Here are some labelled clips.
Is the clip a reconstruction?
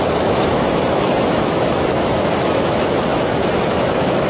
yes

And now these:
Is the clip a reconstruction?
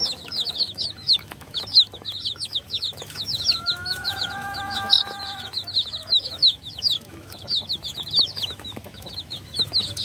yes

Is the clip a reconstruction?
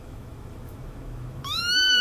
yes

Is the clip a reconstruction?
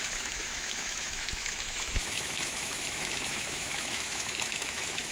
yes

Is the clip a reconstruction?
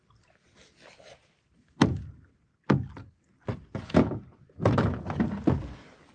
no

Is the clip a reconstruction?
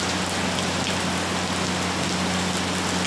no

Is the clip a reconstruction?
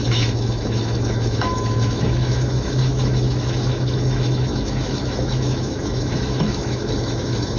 yes